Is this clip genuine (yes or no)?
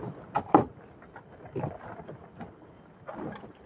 yes